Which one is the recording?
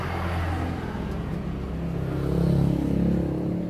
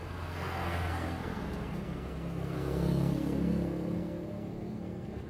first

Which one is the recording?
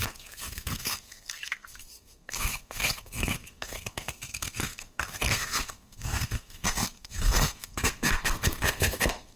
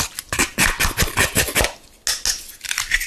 second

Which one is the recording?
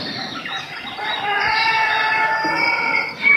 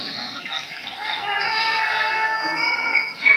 first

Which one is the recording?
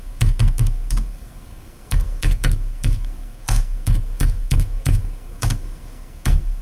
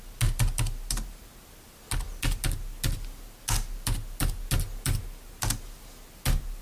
second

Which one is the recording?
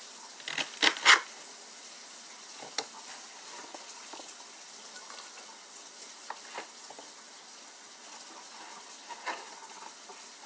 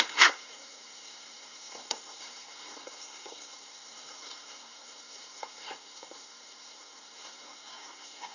first